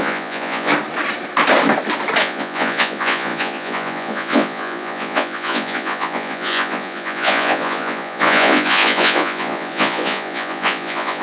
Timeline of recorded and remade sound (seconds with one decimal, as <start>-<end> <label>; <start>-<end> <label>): 0.0-0.7 remade; 0.7-2.2 recorded; 2.2-11.2 remade